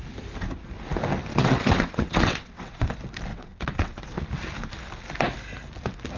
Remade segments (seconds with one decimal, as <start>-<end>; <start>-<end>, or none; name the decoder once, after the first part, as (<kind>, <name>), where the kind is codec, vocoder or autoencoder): 1.3-2.9 (vocoder, WaveNeXt); 3.3-4.2